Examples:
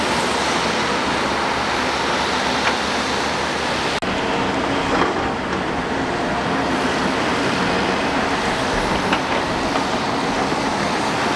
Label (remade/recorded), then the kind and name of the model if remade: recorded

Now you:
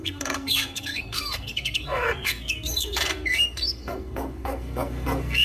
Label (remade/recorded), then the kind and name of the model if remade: remade, codec, SNAC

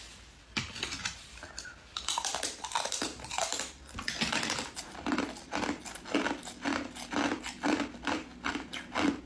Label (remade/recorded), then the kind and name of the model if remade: recorded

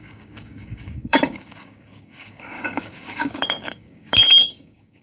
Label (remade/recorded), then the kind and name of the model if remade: remade, codec, DAC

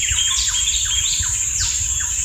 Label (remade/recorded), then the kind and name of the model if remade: remade, vocoder, BigVGAN v2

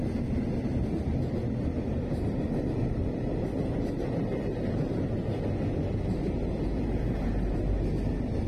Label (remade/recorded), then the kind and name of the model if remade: recorded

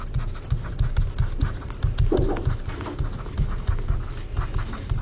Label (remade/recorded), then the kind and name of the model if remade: recorded